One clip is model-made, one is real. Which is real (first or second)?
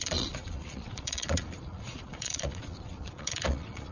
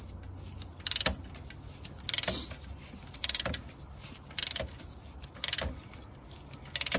second